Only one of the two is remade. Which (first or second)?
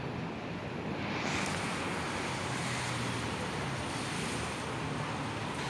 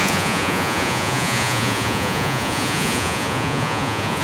second